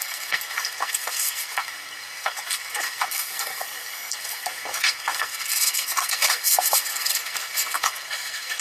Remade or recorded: remade